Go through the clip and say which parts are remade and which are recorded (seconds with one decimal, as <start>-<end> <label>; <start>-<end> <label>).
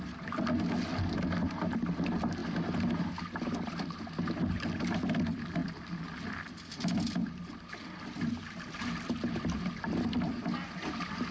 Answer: 0.0-10.4 recorded; 10.4-11.3 remade